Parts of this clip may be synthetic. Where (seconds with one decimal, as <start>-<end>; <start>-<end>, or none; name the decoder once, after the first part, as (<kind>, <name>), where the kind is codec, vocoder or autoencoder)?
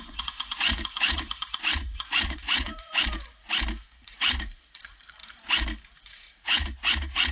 0.0-2.9 (vocoder, Vocos); 4.0-5.2; 6.0-7.3